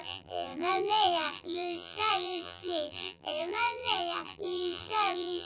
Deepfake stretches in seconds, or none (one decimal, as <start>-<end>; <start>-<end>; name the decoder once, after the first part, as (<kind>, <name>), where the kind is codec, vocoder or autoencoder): 0.0-5.5 (vocoder, BigVGAN v2)